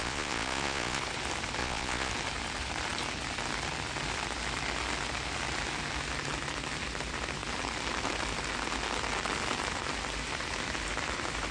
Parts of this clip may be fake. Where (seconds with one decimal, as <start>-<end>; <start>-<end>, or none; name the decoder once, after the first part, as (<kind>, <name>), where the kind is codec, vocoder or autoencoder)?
0.0-1.0 (vocoder, Vocos); 1.6-2.1

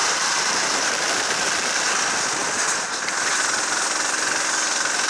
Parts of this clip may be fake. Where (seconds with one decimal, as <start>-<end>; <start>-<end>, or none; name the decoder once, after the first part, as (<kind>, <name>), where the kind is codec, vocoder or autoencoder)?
0.0-1.9 (vocoder, BigVGAN v2)

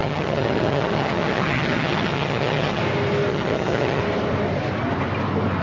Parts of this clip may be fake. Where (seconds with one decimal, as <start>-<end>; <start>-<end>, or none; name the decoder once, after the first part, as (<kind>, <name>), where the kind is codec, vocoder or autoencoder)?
0.0-2.8 (vocoder, HiFi-GAN); 3.3-4.0

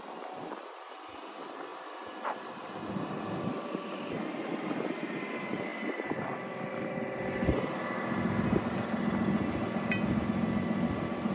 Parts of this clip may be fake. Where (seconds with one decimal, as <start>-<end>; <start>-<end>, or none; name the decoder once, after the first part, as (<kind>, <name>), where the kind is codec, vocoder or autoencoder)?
none